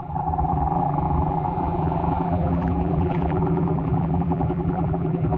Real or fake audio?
fake